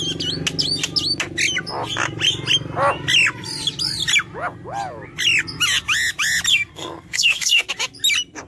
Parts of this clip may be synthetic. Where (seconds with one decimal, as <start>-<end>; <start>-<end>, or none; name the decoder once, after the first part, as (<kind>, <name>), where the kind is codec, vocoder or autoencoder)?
6.5-7.7 (codec, SNAC)